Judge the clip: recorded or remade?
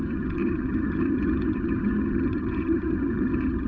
remade